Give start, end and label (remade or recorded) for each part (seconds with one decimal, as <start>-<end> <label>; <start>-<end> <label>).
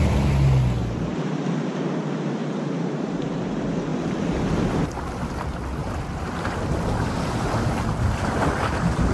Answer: 0.0-0.8 recorded; 0.8-1.3 remade; 1.3-2.4 recorded; 2.4-3.5 remade; 3.5-5.8 recorded; 5.8-6.6 remade; 6.6-9.1 recorded